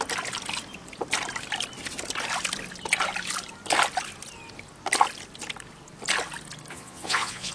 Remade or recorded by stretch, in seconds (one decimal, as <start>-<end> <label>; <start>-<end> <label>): 0.0-6.7 recorded; 6.7-7.5 remade